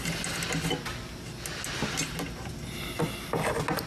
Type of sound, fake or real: real